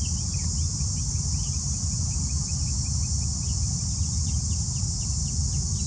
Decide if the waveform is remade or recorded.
recorded